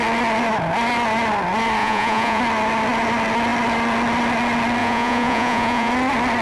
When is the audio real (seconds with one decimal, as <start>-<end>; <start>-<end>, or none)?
0.0-1.8; 2.4-4.8; 5.9-6.4

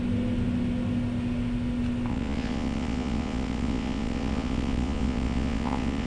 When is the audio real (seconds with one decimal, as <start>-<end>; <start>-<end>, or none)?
0.0-2.1

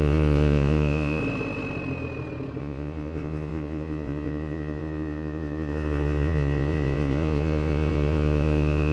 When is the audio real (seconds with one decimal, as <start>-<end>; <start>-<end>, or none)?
1.2-2.6